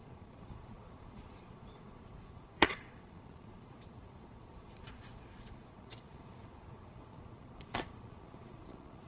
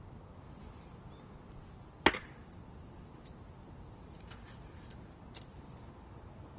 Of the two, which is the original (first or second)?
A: second